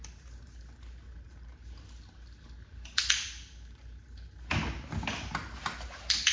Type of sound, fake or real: real